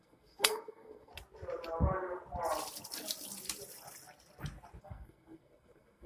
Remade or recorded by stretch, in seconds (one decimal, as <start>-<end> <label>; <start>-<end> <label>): 0.0-1.1 remade; 1.1-4.8 recorded; 4.8-6.1 remade